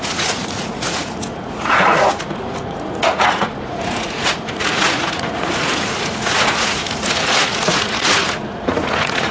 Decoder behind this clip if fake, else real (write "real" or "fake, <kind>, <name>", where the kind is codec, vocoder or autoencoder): fake, vocoder, Vocos